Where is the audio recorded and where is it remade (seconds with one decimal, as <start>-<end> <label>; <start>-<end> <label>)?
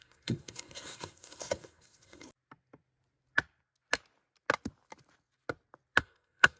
0.0-2.3 remade; 2.3-6.0 recorded; 6.0-6.6 remade